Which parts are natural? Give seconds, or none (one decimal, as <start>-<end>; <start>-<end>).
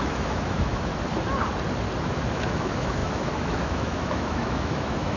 0.9-2.0